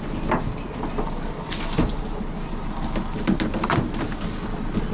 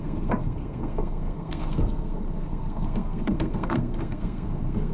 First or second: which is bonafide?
first